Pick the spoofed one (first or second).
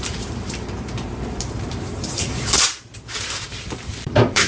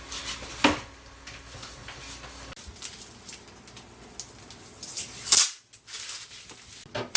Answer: first